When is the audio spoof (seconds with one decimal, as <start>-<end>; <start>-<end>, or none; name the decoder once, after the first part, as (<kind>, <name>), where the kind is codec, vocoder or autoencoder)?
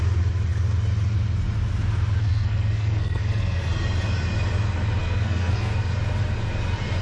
2.2-3.6 (codec, SNAC); 5.0-5.7